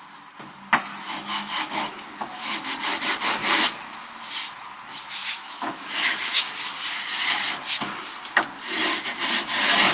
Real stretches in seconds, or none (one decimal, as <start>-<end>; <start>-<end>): 0.0-0.9; 2.7-5.2; 6.8-9.9